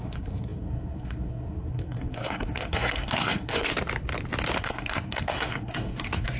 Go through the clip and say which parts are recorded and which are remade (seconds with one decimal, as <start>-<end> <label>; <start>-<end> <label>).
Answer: 0.0-3.7 remade; 3.7-4.6 recorded; 4.6-6.4 remade